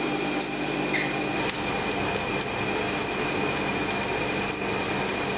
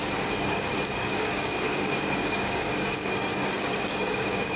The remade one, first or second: second